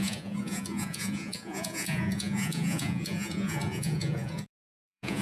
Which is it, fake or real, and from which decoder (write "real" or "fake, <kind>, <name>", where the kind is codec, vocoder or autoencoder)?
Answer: fake, vocoder, Vocos